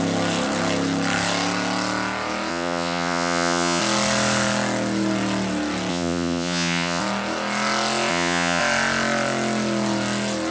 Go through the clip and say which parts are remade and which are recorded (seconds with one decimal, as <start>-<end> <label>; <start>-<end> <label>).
0.0-2.5 recorded; 2.5-3.8 remade; 3.8-5.9 recorded; 5.9-7.0 remade; 7.0-8.1 recorded; 8.1-8.6 remade; 8.6-10.5 recorded